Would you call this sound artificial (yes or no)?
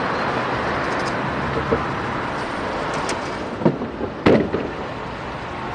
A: no